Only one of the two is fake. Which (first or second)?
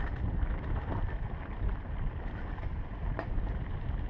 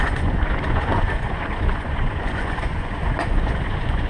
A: second